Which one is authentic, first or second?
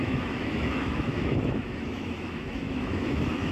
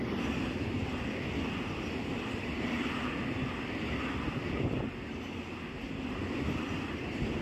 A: second